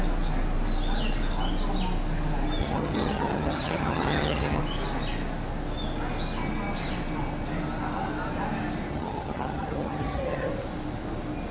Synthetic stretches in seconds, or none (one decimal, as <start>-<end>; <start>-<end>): 2.6-4.6; 8.9-10.5